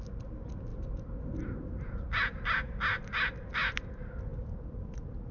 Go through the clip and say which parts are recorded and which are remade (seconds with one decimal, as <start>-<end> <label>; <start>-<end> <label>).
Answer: 0.0-5.3 recorded